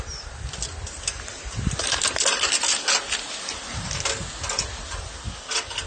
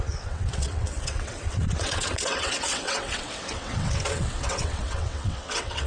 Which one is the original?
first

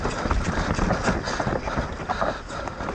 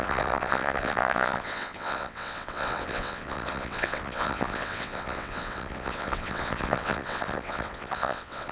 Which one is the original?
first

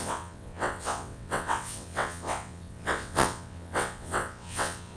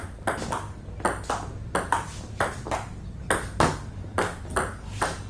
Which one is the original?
second